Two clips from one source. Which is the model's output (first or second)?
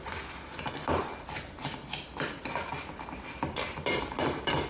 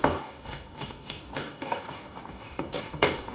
second